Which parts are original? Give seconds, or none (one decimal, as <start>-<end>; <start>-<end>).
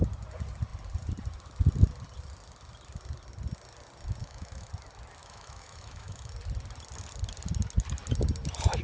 0.0-4.2; 4.7-5.2; 6.3-8.8